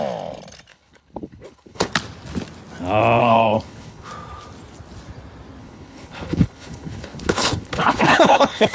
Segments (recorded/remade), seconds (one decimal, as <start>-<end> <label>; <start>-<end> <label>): 0.0-0.7 recorded; 0.7-1.9 remade; 1.9-3.2 recorded; 3.2-4.1 remade; 4.1-5.6 recorded; 5.6-8.7 remade